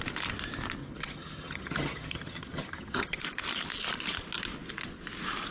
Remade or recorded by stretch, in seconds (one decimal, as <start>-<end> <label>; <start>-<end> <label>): 0.0-0.8 recorded; 0.8-3.2 remade; 3.2-5.5 recorded